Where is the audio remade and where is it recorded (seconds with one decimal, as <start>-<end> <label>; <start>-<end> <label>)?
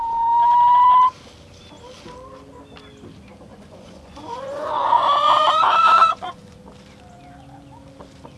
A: 0.0-3.5 recorded; 3.5-6.6 remade; 6.6-8.4 recorded